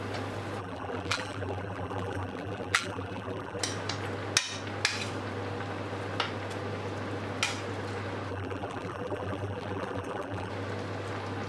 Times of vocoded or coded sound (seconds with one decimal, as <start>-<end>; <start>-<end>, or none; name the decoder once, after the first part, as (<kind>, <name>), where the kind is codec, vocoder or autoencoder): 0.6-3.6 (vocoder, BigVGAN v2); 8.3-10.5